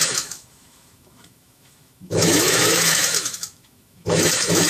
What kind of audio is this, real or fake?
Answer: fake